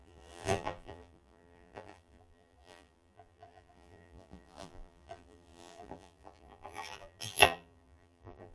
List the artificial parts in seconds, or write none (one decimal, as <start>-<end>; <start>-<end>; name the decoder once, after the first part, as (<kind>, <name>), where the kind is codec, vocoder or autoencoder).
0.0-8.5 (vocoder, BigVGAN v2)